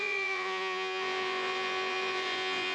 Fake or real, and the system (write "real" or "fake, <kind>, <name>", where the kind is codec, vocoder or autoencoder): fake, vocoder, Vocos